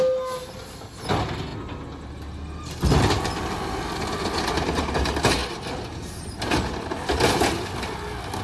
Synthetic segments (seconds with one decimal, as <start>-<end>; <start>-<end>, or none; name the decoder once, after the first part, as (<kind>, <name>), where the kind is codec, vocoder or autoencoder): none